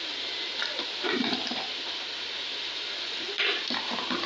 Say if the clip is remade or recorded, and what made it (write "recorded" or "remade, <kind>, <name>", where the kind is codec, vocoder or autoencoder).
recorded